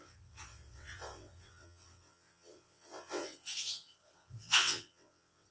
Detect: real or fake fake